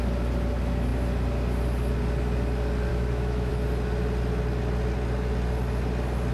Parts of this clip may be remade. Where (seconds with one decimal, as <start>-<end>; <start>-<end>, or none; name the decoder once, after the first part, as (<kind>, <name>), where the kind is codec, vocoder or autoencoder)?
2.9-3.5 (autoencoder, DAC-VAE)